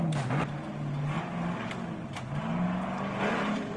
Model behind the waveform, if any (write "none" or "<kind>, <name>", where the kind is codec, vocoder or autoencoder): none